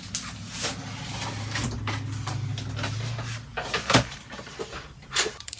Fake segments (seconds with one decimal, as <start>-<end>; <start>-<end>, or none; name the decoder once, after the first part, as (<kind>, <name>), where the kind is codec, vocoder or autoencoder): 3.5-5.6 (vocoder, BigVGAN v2)